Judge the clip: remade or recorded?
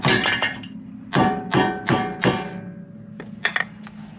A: recorded